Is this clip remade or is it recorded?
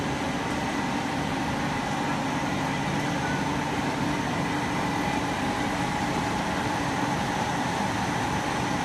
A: recorded